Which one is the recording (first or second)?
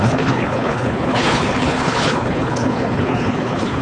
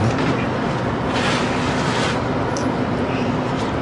second